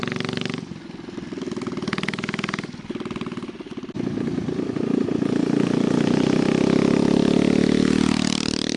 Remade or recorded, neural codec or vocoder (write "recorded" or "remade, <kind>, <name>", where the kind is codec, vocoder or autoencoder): recorded